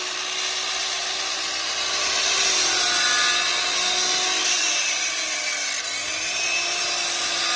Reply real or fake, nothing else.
real